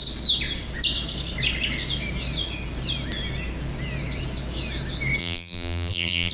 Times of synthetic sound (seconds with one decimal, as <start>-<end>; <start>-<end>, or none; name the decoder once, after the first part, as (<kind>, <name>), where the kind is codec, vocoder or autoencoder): 5.2-6.3 (vocoder, BigVGAN v2)